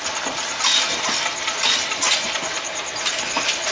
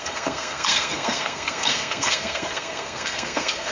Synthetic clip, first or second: second